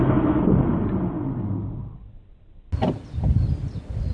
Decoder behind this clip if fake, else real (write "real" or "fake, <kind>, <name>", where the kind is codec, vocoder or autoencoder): real